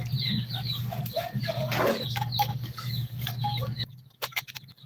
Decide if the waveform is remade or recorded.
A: remade